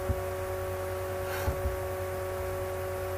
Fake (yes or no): no